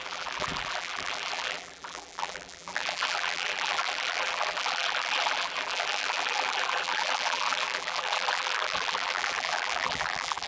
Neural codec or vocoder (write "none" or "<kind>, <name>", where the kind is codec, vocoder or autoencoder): vocoder, BigVGAN v2